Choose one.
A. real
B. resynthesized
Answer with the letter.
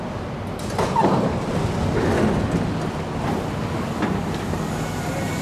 A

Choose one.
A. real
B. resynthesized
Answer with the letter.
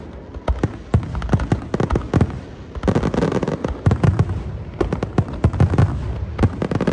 A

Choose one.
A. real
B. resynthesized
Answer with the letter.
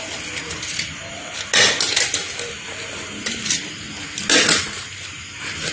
A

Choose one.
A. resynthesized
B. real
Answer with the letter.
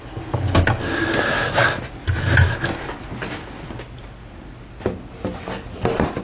B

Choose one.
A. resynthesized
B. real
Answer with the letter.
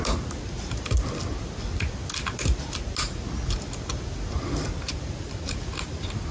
B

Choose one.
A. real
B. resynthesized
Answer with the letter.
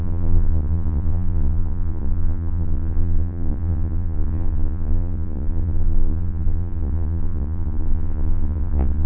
B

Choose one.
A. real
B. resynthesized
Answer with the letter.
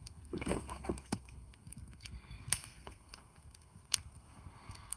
B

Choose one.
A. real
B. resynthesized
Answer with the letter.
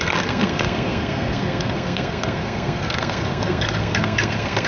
B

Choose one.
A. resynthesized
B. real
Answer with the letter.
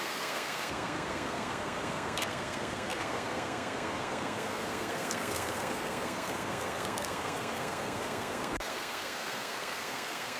A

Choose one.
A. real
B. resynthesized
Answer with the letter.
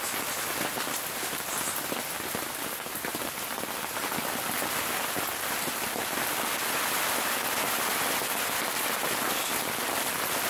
A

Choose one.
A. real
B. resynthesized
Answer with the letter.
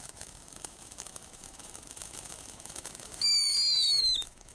B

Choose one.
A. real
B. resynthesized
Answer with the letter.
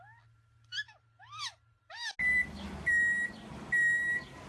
A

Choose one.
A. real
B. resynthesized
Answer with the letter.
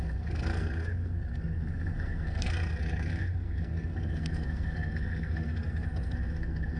B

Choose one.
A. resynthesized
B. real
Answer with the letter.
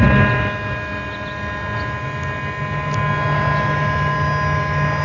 B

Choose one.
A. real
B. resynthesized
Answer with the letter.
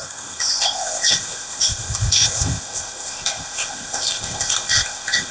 B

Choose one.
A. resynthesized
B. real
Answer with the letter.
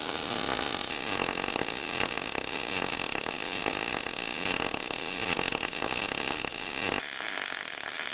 B